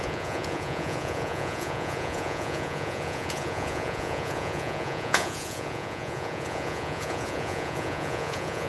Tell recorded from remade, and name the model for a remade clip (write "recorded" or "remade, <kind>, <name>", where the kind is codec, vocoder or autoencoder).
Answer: remade, vocoder, Vocos